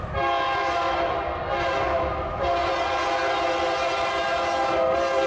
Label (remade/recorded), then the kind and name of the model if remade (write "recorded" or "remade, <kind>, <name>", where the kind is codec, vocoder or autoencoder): recorded